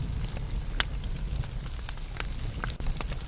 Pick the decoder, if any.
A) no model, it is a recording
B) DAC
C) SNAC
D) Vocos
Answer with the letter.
A